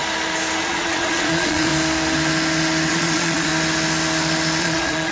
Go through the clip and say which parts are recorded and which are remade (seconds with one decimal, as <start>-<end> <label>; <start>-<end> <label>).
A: 0.0-0.6 recorded; 0.6-1.7 remade; 1.7-2.9 recorded; 2.9-3.5 remade; 3.5-4.6 recorded; 4.6-5.1 remade

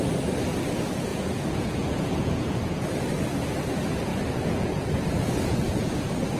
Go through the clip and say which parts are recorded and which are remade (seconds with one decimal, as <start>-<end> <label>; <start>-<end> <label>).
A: 0.0-1.1 recorded; 1.1-2.7 remade; 2.7-4.1 recorded; 4.1-5.9 remade; 5.9-6.4 recorded

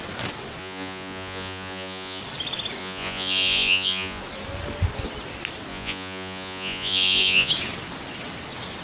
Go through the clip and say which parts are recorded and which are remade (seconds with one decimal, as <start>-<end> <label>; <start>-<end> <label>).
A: 0.0-0.6 recorded; 0.6-2.2 remade; 2.2-2.8 recorded; 2.8-4.2 remade; 4.2-5.7 recorded; 5.7-7.5 remade; 7.5-8.8 recorded

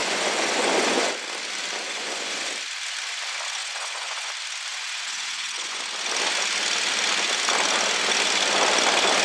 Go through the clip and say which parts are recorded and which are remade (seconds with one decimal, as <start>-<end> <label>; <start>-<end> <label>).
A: 0.0-1.1 remade; 1.1-1.8 recorded; 1.8-2.5 remade; 2.5-3.6 recorded; 3.6-4.3 remade; 4.3-4.7 recorded; 4.7-5.8 remade; 5.8-9.2 recorded

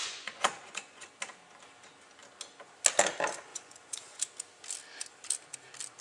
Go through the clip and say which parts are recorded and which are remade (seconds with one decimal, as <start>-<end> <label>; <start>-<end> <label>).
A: 0.0-1.1 remade; 1.1-3.5 recorded; 3.5-4.2 remade; 4.2-6.0 recorded

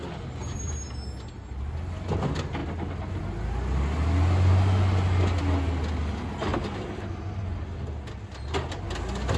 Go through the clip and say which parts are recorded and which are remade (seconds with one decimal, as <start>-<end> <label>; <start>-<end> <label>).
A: 0.0-9.4 recorded

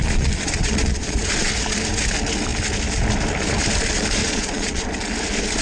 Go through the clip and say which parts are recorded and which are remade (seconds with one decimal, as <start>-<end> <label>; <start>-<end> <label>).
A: 0.0-1.3 remade; 1.3-4.2 recorded; 4.2-4.8 remade; 4.8-5.6 recorded

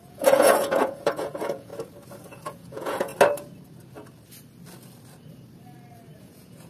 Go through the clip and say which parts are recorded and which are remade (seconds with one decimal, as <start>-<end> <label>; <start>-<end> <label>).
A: 0.0-1.7 remade; 1.7-2.2 recorded; 2.2-3.1 remade; 3.1-6.2 recorded; 6.2-6.7 remade